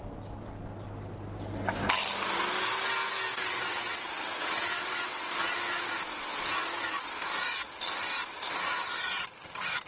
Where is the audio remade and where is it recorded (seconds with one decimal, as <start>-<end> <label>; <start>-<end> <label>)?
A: 0.0-3.3 recorded; 3.3-5.3 remade; 5.3-9.9 recorded